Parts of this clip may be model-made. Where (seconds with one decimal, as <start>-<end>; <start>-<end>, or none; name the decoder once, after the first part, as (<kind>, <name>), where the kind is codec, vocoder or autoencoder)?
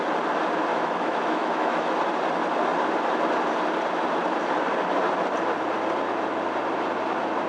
0.7-2.0 (autoencoder, DAC-VAE)